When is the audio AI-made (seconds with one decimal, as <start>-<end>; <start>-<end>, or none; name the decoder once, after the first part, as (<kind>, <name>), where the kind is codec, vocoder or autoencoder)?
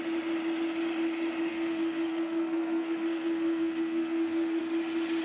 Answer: 1.5-4.6 (codec, SNAC)